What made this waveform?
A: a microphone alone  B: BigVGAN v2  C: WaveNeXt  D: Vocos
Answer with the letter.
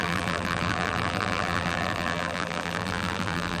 B